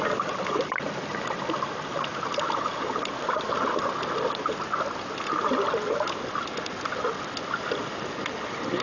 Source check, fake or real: real